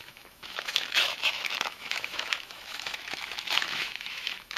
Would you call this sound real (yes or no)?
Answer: no